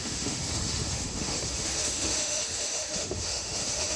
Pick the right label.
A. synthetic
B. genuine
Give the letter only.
A